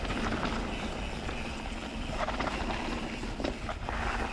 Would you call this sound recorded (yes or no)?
yes